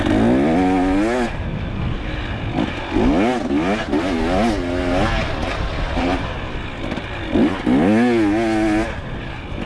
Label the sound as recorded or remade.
recorded